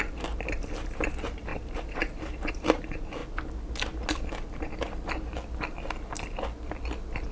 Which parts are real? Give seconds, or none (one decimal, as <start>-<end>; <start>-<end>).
3.2-7.3